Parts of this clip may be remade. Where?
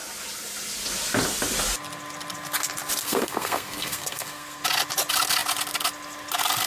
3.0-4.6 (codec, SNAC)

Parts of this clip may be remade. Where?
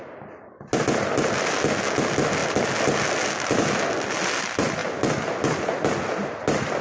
none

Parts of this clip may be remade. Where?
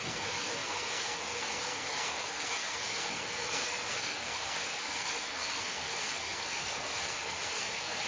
0.0-8.1 (codec, SNAC)